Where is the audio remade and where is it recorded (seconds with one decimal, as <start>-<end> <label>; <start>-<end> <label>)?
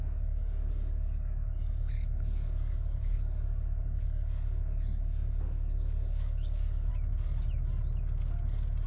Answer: 0.0-6.9 remade; 6.9-8.9 recorded